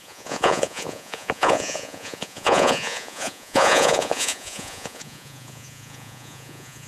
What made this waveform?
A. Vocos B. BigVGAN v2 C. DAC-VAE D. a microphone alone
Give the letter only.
A